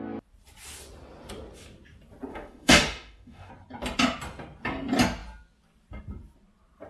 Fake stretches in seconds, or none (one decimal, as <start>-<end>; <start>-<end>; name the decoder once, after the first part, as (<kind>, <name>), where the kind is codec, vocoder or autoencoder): 2.3-3.5 (autoencoder, DAC-VAE)